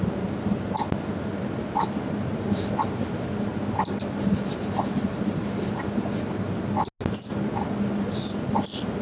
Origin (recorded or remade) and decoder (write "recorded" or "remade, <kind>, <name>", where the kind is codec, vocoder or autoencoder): recorded